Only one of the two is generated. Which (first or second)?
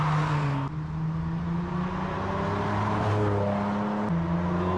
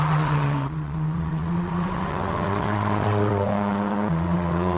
second